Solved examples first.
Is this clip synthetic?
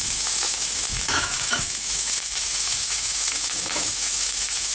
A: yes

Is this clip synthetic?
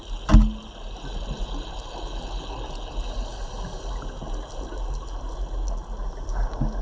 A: no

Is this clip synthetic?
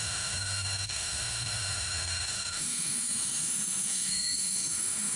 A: yes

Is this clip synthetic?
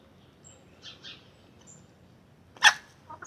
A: no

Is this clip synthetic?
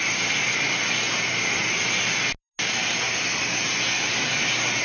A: no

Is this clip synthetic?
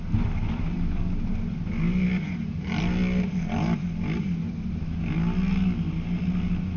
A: no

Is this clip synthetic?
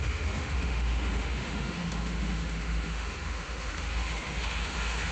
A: yes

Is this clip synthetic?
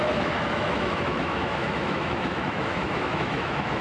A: yes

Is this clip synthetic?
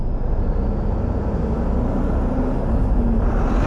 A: no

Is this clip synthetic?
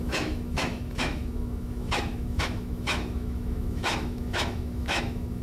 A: yes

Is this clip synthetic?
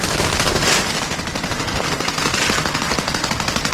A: no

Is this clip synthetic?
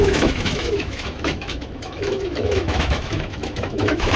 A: yes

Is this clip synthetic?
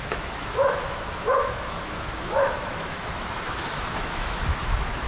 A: yes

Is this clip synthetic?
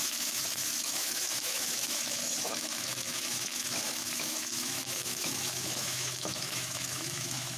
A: yes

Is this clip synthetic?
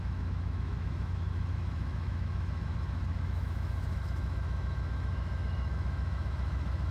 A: yes